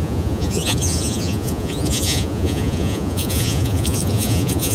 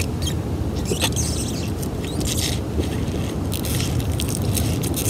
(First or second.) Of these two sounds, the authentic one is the second